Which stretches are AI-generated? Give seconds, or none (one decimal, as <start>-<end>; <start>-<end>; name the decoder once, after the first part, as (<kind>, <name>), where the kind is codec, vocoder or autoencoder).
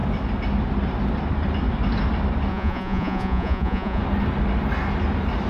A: 2.5-4.0 (vocoder, Vocos)